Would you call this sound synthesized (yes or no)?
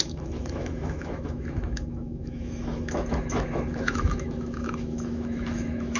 yes